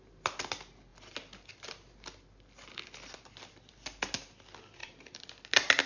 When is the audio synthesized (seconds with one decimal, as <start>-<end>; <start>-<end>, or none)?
4.8-5.3